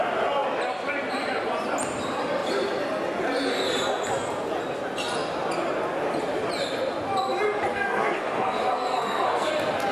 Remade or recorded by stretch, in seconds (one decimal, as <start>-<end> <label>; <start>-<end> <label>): 0.0-7.7 recorded; 7.7-9.5 remade; 9.5-9.9 recorded